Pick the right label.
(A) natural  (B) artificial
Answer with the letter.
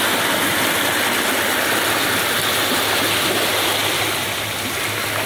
A